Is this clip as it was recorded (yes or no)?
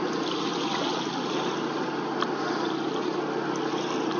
yes